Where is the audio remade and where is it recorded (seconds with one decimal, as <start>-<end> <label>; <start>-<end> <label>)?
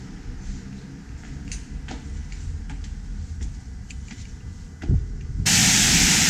0.0-6.3 recorded